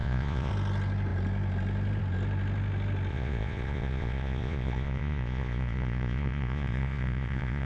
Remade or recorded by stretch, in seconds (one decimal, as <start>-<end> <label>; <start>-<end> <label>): 0.0-0.5 remade; 0.5-3.1 recorded; 3.1-7.7 remade